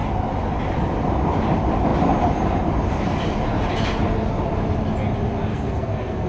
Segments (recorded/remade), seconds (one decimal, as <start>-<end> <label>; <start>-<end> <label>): 0.0-5.5 recorded; 5.5-6.3 remade